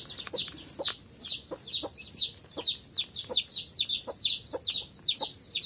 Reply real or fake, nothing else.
real